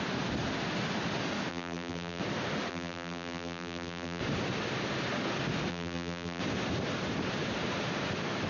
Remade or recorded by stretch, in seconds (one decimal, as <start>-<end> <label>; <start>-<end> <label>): 0.0-1.5 recorded; 1.5-2.2 remade; 2.2-2.7 recorded; 2.7-4.2 remade; 4.2-5.7 recorded; 5.7-6.4 remade; 6.4-8.5 recorded